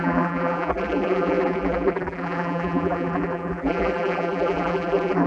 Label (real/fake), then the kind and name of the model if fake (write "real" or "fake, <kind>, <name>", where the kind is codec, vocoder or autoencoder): fake, vocoder, BigVGAN v2